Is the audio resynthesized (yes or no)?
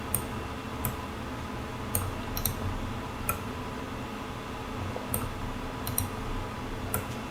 no